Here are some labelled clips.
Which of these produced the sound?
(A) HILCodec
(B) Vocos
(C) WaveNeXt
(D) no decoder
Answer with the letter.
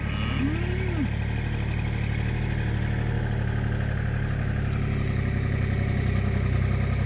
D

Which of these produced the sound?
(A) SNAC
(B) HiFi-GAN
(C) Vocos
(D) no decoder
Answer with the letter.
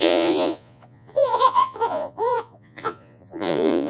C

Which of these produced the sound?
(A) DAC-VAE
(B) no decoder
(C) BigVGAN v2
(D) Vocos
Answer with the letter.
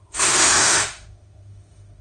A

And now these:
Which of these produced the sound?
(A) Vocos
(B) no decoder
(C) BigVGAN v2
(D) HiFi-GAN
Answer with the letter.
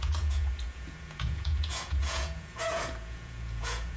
A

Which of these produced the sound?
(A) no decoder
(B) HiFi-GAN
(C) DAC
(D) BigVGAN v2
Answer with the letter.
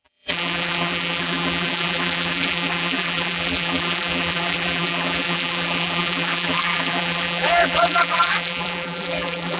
D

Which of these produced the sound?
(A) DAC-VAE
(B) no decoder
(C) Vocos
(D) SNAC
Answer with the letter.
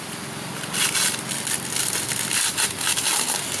B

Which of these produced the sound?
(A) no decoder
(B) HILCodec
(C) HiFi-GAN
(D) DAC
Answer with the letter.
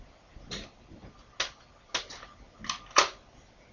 A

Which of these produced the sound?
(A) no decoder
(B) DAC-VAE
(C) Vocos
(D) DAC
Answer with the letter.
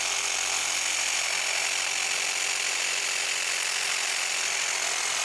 A